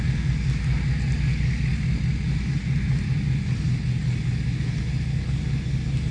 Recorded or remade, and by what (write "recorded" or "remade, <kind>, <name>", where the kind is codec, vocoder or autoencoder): recorded